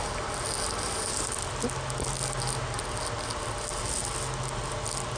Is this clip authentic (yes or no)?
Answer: yes